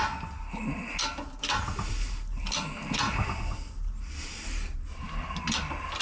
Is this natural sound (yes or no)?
yes